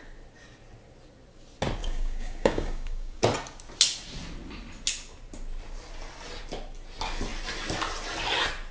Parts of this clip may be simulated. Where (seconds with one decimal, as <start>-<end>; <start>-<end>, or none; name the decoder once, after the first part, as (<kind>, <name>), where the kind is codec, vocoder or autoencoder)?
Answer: 1.8-3.2 (codec, DAC)

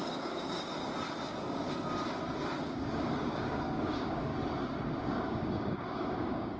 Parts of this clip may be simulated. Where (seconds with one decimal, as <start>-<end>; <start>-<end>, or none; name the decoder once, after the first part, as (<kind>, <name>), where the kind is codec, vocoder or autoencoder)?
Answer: 0.0-0.9 (codec, DAC); 2.6-4.3; 4.9-6.6

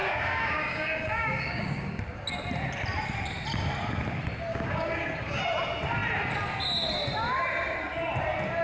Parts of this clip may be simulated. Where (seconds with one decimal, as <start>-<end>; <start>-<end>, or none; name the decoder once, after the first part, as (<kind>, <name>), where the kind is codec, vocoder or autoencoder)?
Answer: 0.0-2.0 (codec, DAC); 4.5-5.4